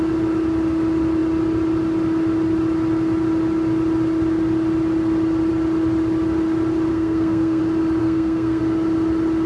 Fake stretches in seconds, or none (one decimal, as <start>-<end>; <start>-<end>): 6.9-7.6; 8.0-8.6